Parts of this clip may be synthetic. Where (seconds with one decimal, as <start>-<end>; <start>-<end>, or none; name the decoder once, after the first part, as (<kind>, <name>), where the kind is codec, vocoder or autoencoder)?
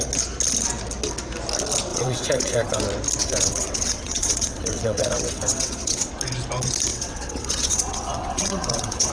1.9-2.8 (vocoder, WaveNeXt); 3.2-6.1; 6.9-9.1